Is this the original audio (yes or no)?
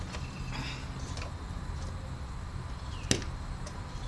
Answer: yes